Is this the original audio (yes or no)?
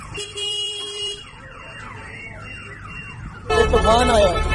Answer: no